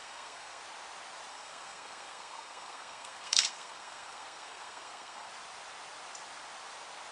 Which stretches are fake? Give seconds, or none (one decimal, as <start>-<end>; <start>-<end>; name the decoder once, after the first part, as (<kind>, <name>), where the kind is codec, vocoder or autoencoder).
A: 0.0-0.6 (codec, SNAC); 1.3-5.3